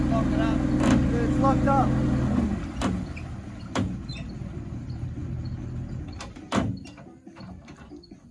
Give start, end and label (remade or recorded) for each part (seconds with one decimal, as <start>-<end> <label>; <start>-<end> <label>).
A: 0.0-8.3 recorded